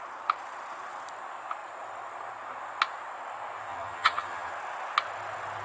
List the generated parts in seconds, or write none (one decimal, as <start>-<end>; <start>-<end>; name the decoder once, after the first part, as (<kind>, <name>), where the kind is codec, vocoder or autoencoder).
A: 3.7-4.5 (vocoder, HiFi-GAN)